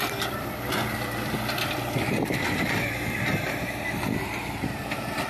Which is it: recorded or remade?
remade